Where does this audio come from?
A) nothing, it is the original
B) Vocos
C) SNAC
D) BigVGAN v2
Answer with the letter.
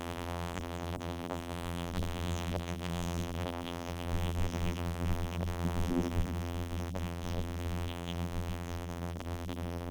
D